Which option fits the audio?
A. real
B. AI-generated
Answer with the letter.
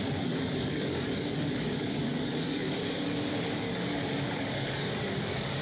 B